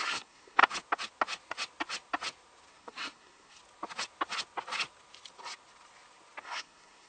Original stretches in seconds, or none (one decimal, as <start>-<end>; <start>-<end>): 0.6-2.7; 3.6-6.4

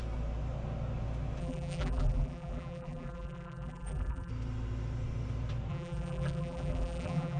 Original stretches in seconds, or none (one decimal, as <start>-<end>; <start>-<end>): 0.0-1.4; 4.3-5.7

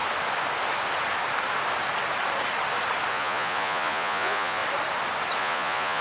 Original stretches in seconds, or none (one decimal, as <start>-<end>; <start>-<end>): 0.0-3.1; 4.6-5.4

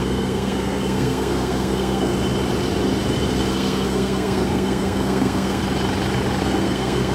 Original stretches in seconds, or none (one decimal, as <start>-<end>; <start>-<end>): 2.1-3.3; 5.6-6.4

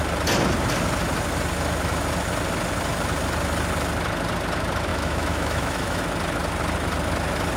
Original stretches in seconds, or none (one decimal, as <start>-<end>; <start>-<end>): 0.0-4.9; 6.0-7.6

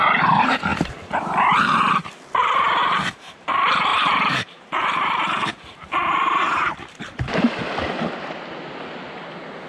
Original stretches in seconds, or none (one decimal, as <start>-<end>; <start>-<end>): 0.0-2.8; 3.5-3.9; 7.6-9.7